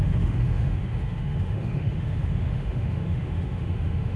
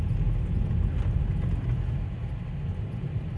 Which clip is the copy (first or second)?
first